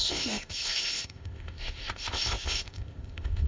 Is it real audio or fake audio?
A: fake